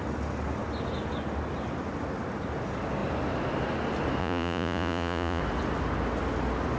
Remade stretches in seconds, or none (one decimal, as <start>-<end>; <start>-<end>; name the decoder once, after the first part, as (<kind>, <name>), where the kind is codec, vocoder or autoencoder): 4.2-5.4 (vocoder, Vocos)